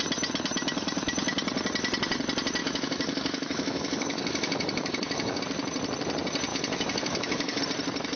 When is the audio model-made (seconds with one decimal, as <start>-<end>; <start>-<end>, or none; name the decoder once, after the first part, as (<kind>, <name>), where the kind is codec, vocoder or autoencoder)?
2.6-5.4 (autoencoder, DAC-VAE); 6.5-7.6